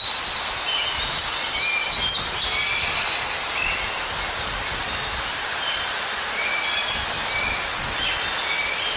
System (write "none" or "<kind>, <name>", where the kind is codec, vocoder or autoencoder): none